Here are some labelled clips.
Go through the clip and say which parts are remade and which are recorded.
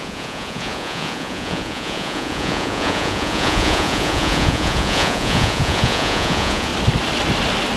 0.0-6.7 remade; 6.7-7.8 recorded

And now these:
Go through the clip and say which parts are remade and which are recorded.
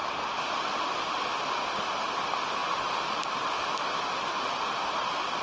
0.0-5.4 recorded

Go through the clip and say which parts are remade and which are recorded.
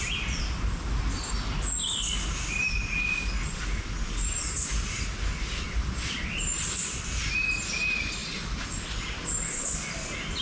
0.0-10.4 recorded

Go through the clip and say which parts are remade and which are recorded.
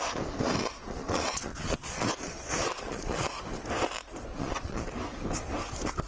0.0-0.8 recorded; 0.8-3.4 remade; 3.4-4.3 recorded; 4.3-4.9 remade; 4.9-6.1 recorded